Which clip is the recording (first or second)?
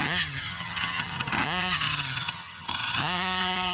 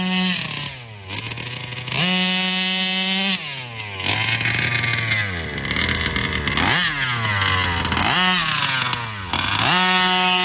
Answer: second